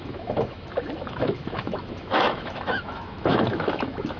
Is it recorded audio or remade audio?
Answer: remade